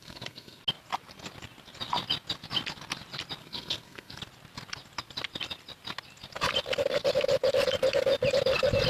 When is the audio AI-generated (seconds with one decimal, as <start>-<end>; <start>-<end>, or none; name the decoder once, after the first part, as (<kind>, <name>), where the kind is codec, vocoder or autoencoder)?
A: 0.0-0.6 (codec, SNAC); 3.4-4.2

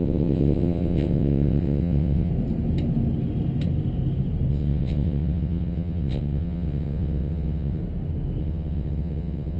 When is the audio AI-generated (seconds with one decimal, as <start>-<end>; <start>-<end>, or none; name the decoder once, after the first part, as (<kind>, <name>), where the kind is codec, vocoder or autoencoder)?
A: 0.0-2.3 (vocoder, WaveNeXt); 4.5-7.8; 8.4-9.6

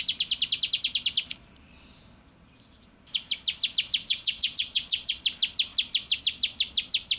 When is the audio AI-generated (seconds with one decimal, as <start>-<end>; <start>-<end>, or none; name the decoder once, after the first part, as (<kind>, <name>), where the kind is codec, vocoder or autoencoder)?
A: 4.1-5.1 (vocoder, Vocos)

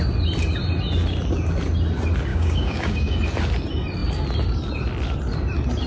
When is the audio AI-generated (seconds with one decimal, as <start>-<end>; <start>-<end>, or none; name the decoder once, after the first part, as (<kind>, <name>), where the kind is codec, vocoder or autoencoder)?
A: 2.3-3.2 (codec, DAC)

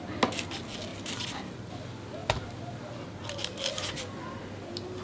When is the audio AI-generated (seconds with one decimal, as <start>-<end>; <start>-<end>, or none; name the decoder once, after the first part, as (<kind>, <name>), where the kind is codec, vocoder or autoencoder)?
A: 0.9-1.7 (vocoder, BigVGAN v2)